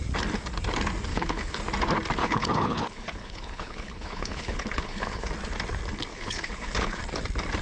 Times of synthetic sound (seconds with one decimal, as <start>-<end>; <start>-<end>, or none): 1.1-1.6; 2.2-5.3; 6.1-7.0